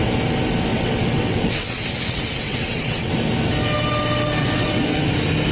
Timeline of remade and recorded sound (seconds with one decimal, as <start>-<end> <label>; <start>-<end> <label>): 0.0-0.7 recorded; 0.7-3.2 remade; 3.2-4.4 recorded; 4.4-5.1 remade; 5.1-5.5 recorded